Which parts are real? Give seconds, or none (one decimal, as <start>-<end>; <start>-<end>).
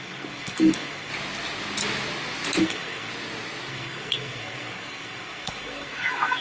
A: 1.1-2.6; 3.1-3.7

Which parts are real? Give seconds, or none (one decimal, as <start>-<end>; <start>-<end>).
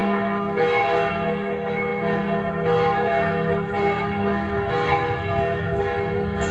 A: none